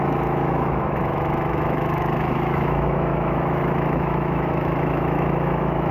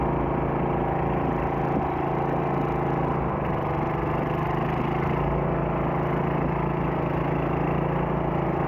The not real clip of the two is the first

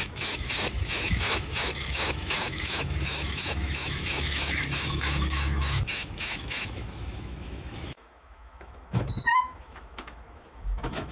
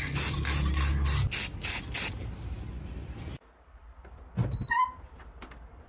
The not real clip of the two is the first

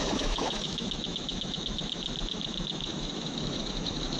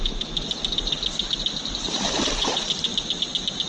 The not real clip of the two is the first